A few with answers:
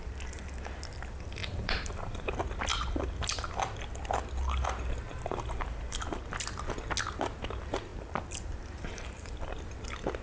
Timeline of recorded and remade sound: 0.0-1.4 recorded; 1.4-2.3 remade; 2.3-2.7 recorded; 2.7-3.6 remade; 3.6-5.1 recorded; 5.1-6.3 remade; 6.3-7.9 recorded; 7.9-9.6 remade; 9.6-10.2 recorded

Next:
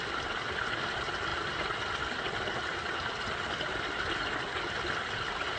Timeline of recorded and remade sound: 0.0-5.6 recorded

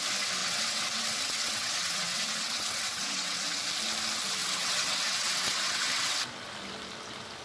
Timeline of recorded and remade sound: 0.0-0.4 recorded; 0.4-3.6 remade; 3.6-4.4 recorded; 4.4-6.2 remade; 6.2-7.4 recorded

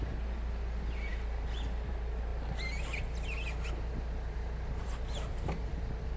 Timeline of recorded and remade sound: 0.0-6.2 recorded

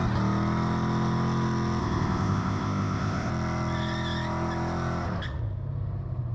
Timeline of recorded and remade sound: 0.0-1.8 recorded; 1.8-3.3 remade; 3.3-6.3 recorded

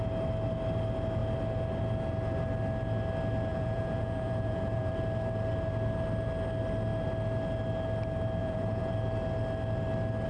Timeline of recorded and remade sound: 0.0-3.5 recorded; 3.5-4.9 remade; 4.9-8.4 recorded; 8.4-8.9 remade; 8.9-10.3 recorded